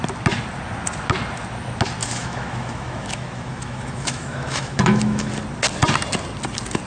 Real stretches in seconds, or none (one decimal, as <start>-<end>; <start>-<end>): 0.0-2.0; 5.3-6.9